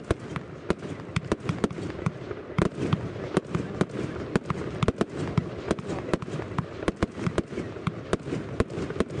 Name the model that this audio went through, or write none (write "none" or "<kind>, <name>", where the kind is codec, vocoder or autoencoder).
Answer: none